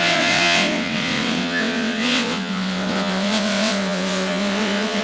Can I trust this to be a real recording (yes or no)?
no